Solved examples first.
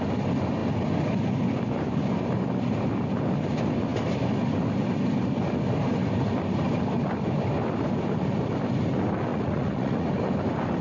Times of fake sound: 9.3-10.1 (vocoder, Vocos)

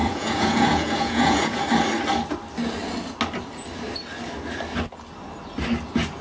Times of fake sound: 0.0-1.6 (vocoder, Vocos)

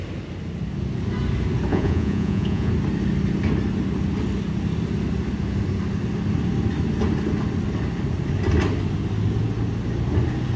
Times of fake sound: 1.7-2.7 (vocoder, Vocos)

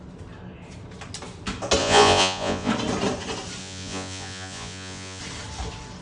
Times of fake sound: 1.8-2.7 (vocoder, Vocos); 3.6-5.2